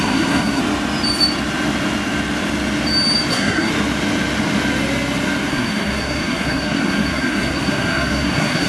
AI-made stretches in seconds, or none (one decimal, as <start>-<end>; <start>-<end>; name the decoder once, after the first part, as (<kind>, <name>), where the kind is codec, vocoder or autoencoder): 0.0-0.6 (codec, SNAC); 3.3-3.7; 5.5-8.7